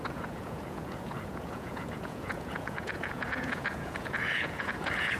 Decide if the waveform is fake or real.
fake